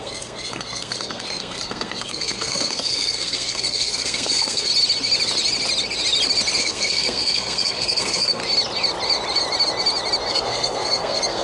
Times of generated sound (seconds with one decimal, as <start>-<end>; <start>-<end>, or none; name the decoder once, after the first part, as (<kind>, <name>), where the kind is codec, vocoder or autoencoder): 0.0-4.7 (codec, SNAC); 6.6-8.4; 10.3-11.4